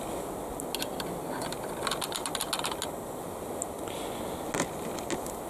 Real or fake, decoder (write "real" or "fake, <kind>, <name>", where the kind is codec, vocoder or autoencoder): real